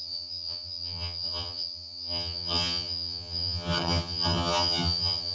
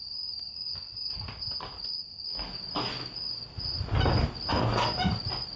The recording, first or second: second